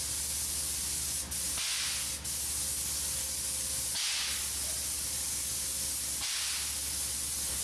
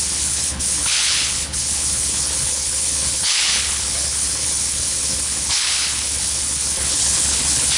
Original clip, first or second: first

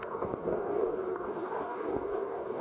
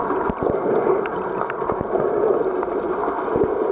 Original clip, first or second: second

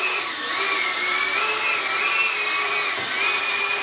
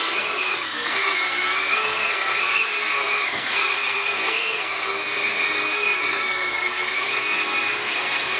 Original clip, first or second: first